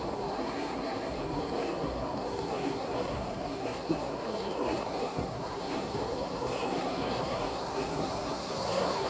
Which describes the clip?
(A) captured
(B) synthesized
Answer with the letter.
B